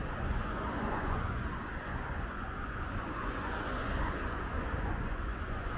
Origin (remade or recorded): remade